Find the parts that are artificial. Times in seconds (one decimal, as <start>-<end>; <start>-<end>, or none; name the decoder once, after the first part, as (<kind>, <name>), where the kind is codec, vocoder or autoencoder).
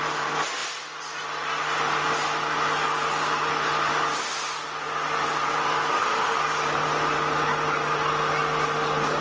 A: 5.9-6.4 (autoencoder, DAC-VAE)